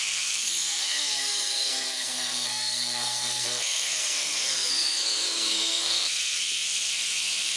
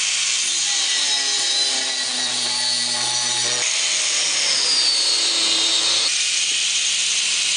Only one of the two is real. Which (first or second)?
second